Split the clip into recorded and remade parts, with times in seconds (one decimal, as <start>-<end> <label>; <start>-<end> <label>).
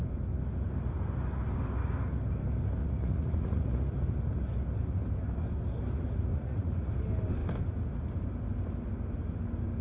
0.0-2.8 recorded; 2.8-4.0 remade; 4.0-6.3 recorded; 6.3-6.9 remade; 6.9-9.8 recorded